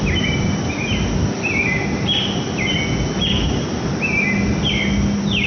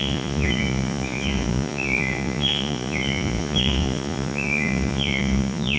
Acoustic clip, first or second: first